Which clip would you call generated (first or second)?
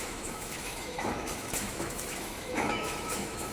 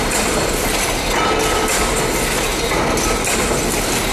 first